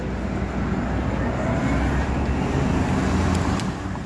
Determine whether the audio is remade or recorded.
recorded